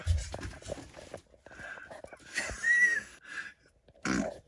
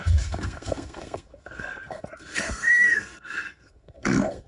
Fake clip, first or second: second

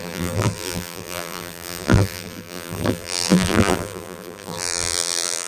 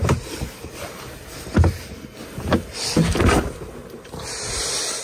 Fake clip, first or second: first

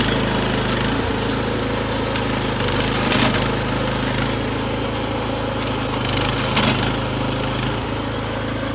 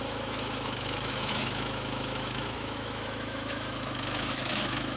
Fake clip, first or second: second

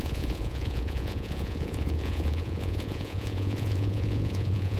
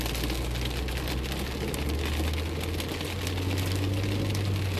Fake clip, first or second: first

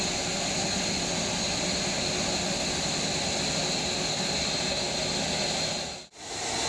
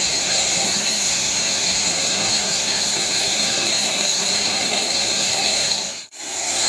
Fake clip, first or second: second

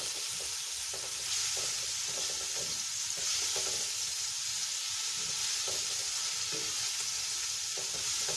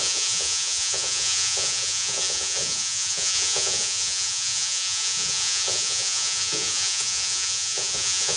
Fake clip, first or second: second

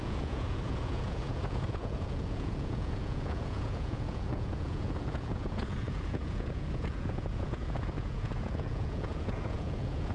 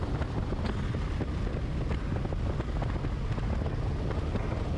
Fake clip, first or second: first